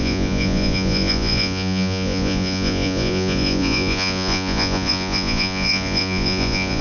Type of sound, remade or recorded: remade